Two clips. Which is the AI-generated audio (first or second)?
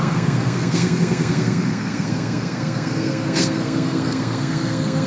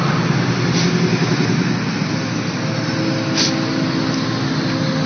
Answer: first